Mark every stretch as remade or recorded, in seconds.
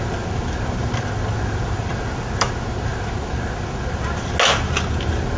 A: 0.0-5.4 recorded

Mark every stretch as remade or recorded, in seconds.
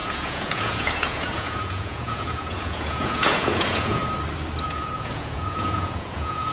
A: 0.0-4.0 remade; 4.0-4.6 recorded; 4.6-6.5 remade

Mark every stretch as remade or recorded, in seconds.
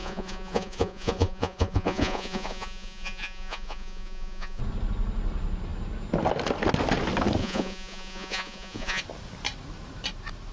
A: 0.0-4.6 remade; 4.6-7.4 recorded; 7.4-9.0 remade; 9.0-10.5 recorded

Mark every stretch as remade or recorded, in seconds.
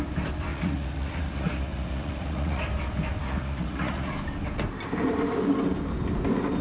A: 0.0-0.5 recorded; 0.5-2.6 remade; 2.6-3.2 recorded; 3.2-4.1 remade; 4.1-6.6 recorded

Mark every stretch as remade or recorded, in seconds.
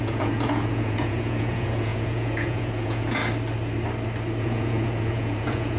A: 0.0-3.2 remade; 3.2-4.4 recorded; 4.4-5.8 remade